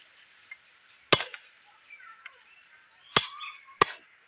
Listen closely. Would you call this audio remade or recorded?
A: recorded